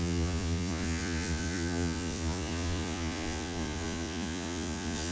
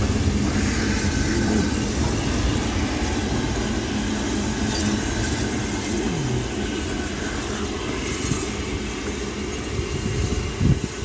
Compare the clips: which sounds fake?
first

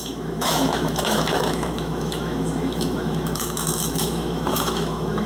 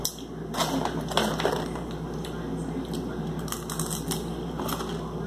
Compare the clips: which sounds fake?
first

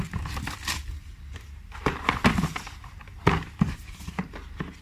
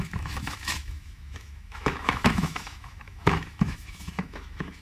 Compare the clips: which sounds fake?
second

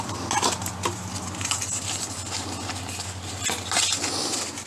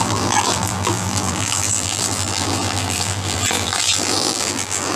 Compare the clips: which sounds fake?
second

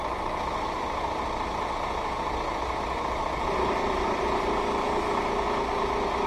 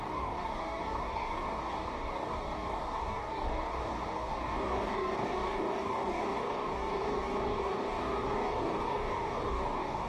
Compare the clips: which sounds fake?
second